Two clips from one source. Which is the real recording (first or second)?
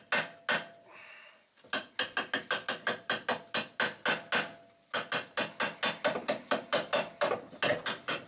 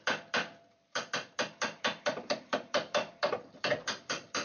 first